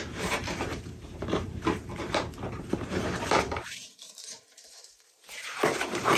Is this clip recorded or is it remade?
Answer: remade